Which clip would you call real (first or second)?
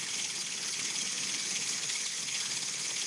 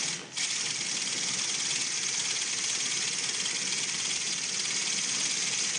second